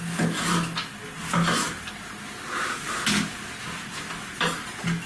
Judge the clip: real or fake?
real